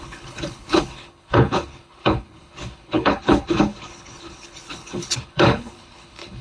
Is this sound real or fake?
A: fake